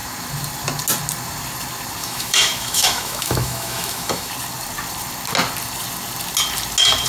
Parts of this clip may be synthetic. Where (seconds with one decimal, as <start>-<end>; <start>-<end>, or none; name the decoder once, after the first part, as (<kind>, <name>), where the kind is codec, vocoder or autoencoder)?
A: 2.0-4.3 (autoencoder, DAC-VAE)